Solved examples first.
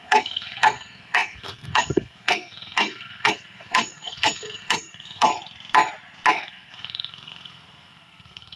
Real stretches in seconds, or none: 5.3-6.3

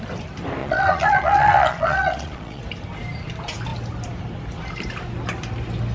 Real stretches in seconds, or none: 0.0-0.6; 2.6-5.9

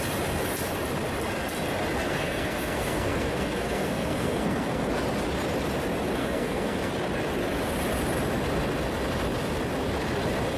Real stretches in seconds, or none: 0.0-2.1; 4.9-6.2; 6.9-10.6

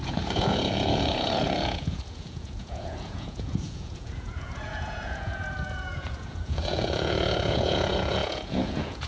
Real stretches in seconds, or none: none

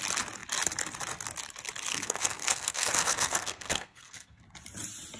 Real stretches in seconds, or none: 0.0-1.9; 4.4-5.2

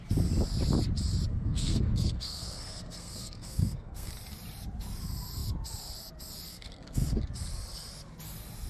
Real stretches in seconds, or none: 0.0-1.3; 4.1-6.5; 7.2-8.7